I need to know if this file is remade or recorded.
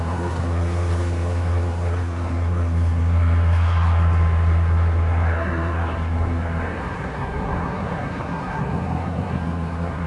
remade